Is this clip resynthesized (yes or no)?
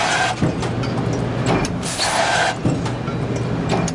no